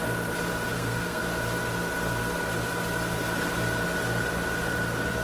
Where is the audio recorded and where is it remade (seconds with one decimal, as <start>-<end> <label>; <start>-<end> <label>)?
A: 0.0-0.7 recorded; 0.7-1.2 remade; 1.2-5.2 recorded